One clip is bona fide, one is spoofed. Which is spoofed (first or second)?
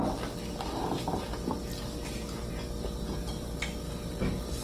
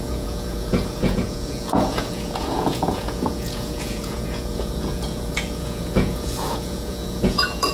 second